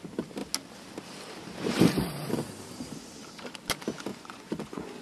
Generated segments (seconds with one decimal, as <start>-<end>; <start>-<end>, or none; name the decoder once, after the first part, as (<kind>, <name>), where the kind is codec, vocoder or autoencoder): 4.1-5.0 (vocoder, Vocos)